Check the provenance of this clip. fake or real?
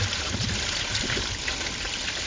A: real